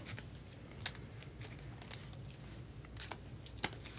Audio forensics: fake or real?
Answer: real